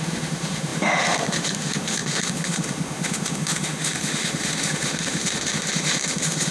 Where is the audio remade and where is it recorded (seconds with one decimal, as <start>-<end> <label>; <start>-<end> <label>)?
0.0-6.5 remade